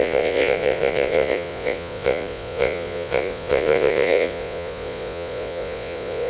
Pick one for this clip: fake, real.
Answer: fake